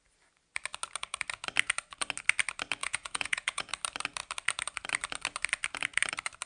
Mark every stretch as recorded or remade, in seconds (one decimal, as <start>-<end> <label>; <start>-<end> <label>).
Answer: 0.0-2.8 recorded; 2.8-3.7 remade; 3.7-6.5 recorded